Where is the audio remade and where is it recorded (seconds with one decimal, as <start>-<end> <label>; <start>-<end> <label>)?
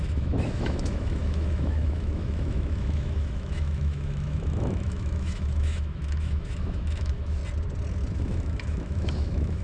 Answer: 0.0-7.4 remade; 7.4-8.1 recorded; 8.1-9.6 remade